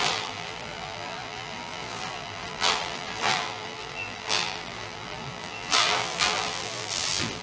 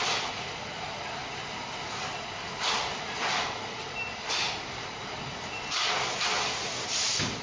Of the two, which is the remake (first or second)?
first